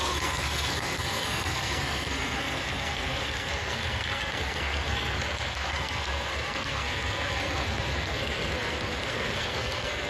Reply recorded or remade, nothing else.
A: remade